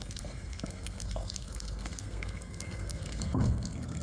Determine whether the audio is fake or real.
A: fake